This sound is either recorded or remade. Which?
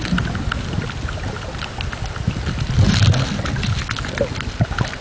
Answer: recorded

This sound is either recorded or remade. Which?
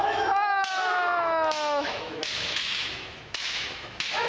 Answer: remade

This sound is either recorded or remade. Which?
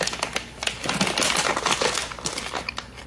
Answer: recorded